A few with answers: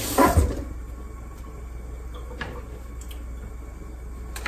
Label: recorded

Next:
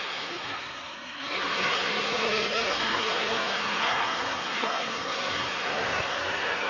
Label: remade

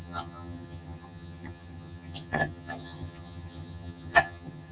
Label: remade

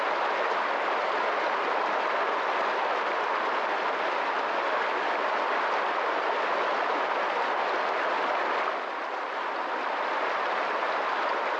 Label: recorded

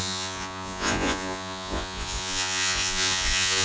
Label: remade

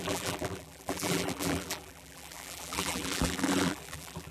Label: remade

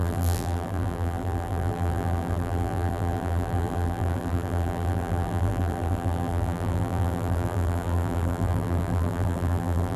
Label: remade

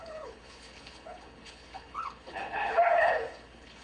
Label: remade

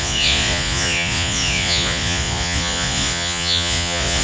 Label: remade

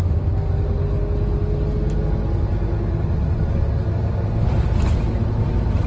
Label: recorded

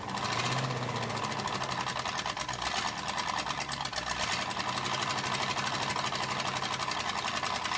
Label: recorded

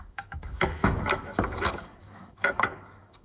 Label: remade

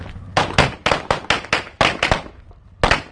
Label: recorded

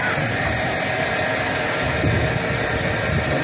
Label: recorded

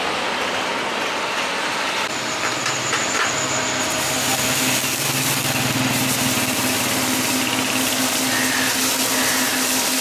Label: recorded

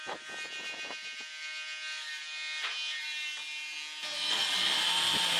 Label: recorded